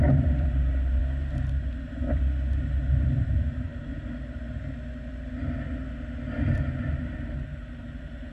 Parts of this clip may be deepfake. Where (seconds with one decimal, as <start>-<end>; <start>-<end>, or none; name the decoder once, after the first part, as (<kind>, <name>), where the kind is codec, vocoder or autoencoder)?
0.0-1.0 (vocoder, BigVGAN v2); 1.9-3.7; 6.7-8.3

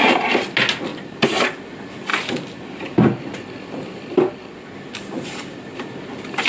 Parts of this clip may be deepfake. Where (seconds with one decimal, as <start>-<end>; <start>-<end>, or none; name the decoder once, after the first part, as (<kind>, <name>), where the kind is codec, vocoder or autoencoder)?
0.9-1.4 (vocoder, BigVGAN v2); 2.1-4.2

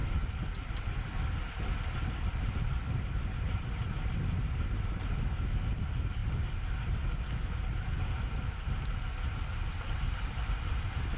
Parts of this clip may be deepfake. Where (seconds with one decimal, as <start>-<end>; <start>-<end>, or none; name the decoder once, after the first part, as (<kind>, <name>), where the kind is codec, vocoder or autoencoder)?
none

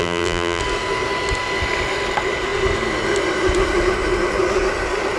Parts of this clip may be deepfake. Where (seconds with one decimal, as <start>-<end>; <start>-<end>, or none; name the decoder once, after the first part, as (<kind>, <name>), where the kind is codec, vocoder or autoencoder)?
0.0-0.6 (vocoder, BigVGAN v2)

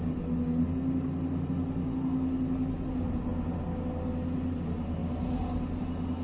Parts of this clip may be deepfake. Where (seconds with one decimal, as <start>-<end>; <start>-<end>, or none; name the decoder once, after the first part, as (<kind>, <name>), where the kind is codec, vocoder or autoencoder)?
none

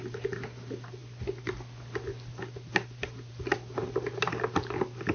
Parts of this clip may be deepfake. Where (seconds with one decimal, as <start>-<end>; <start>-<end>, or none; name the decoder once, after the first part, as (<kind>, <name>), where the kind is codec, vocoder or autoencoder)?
none

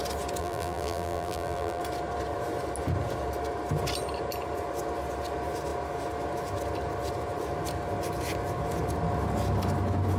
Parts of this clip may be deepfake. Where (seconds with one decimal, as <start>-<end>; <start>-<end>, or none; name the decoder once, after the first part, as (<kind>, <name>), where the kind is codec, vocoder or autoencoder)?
0.4-1.8 (vocoder, BigVGAN v2)